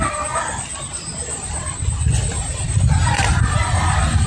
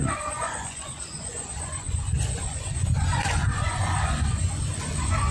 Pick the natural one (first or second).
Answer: first